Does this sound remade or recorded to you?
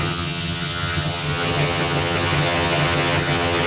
remade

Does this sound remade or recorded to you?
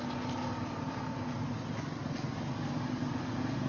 recorded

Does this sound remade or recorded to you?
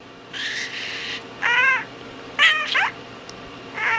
recorded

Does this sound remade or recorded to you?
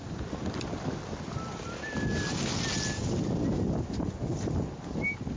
recorded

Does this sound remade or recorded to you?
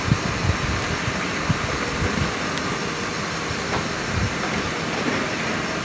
recorded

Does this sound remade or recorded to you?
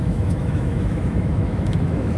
remade